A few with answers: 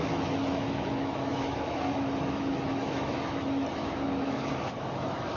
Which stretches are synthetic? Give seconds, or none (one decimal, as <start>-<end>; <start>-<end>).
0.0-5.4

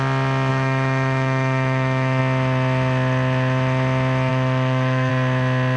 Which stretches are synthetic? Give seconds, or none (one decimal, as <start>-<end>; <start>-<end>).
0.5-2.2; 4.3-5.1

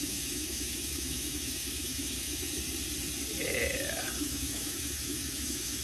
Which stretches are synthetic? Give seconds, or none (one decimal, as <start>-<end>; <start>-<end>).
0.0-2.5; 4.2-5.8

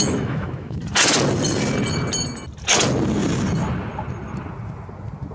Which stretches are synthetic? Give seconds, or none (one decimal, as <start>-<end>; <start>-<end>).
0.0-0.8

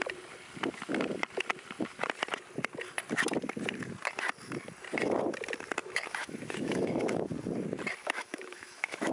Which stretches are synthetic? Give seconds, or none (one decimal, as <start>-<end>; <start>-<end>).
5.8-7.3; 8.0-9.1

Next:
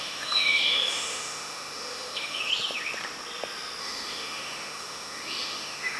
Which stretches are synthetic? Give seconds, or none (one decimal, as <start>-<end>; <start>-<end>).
0.0-2.5; 3.8-6.0